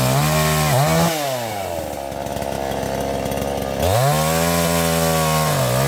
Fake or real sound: real